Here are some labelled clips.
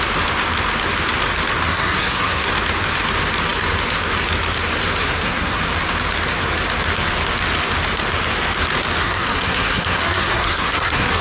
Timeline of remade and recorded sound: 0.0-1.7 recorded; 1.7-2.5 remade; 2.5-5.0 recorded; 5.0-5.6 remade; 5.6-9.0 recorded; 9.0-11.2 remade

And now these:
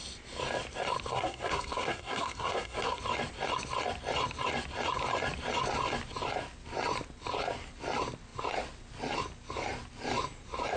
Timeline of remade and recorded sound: 0.0-1.1 recorded; 1.1-3.0 remade; 3.0-10.8 recorded

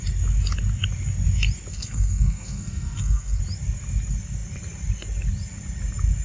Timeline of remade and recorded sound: 0.0-1.7 recorded; 1.7-3.4 remade; 3.4-6.2 recorded